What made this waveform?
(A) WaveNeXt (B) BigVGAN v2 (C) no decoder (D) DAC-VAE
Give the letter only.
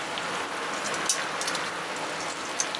C